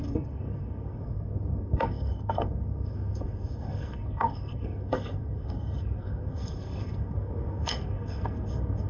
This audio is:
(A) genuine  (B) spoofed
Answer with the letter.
B